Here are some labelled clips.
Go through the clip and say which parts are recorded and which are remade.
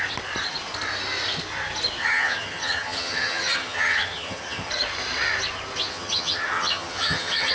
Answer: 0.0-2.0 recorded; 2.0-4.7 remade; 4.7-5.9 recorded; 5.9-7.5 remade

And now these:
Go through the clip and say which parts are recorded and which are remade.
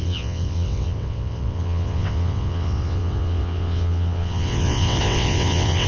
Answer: 0.0-5.9 remade